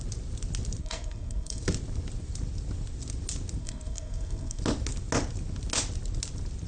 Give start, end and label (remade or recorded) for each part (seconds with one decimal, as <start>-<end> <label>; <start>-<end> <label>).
0.0-0.8 recorded; 0.8-1.6 remade; 1.6-3.6 recorded; 3.6-4.6 remade; 4.6-6.7 recorded